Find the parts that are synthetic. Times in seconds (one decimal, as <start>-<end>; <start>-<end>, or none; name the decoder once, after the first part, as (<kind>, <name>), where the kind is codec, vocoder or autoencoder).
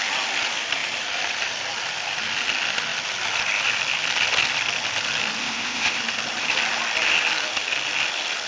5.4-6.0 (codec, ZipCodec)